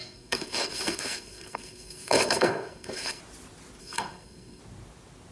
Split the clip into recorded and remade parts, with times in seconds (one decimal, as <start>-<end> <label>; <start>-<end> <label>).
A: 0.0-3.2 remade; 3.2-3.8 recorded; 3.8-4.6 remade; 4.6-5.3 recorded